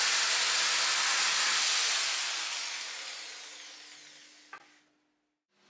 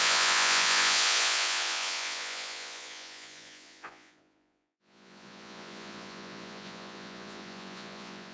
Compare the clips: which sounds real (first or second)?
first